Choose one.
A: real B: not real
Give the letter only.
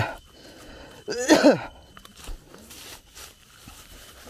A